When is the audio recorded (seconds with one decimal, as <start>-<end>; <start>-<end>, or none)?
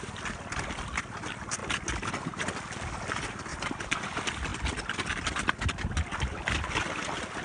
0.0-3.5; 4.0-7.4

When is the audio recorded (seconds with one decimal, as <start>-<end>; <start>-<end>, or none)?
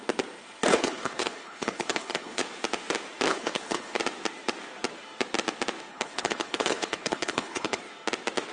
0.0-0.7; 2.4-3.3; 4.0-5.9; 7.8-8.5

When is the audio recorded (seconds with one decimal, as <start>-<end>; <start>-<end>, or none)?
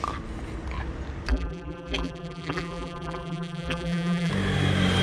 0.0-1.3; 4.3-5.0